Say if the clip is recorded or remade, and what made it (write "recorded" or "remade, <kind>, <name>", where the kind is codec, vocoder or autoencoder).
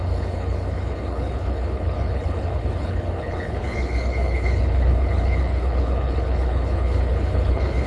remade, codec, HILCodec